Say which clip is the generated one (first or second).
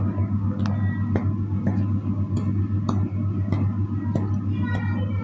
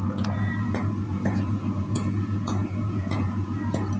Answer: second